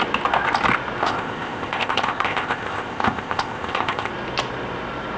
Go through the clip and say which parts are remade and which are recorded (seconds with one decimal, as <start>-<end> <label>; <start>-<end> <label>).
0.0-1.0 recorded; 1.0-4.1 remade; 4.1-5.2 recorded